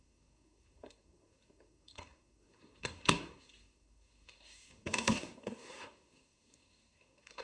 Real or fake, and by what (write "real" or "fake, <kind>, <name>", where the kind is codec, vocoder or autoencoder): fake, codec, SNAC